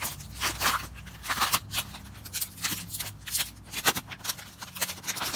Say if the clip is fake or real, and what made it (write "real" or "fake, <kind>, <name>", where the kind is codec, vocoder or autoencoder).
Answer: real